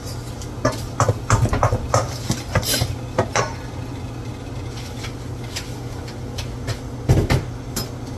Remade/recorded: recorded